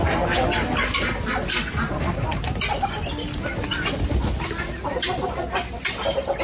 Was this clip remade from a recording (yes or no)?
no